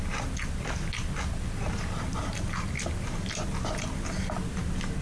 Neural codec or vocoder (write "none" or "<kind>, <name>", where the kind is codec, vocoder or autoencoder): none